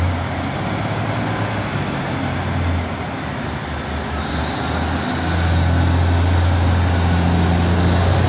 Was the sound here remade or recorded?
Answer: recorded